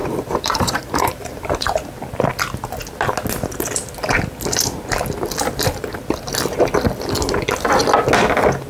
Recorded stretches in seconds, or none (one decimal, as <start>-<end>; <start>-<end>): 1.9-8.7